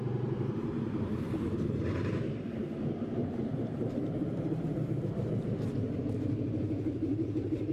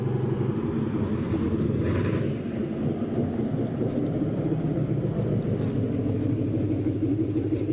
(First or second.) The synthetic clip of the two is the first